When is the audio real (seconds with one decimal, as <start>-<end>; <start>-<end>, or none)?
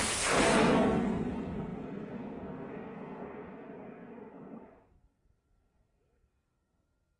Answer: none